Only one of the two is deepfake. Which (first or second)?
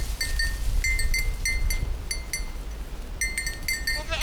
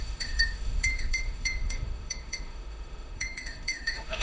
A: second